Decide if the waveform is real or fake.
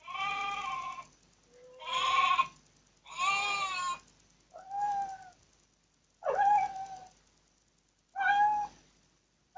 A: real